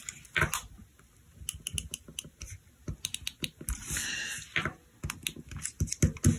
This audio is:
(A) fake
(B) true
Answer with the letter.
B